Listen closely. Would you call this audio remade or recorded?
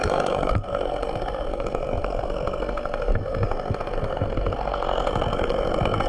remade